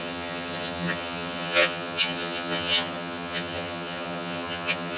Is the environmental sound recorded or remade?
remade